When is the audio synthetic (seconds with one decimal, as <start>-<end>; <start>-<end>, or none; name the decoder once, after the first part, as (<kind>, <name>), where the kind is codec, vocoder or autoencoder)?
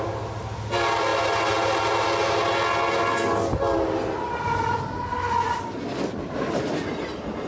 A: none